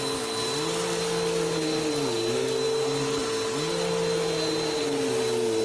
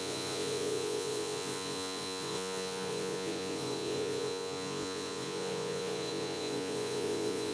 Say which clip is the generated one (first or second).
second